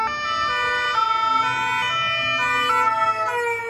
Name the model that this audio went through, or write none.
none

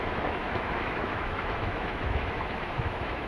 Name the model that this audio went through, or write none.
autoencoder, DAC-VAE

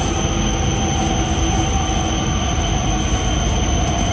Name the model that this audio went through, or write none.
none